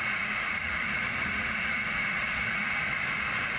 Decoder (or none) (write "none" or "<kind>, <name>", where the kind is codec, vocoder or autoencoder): vocoder, Vocos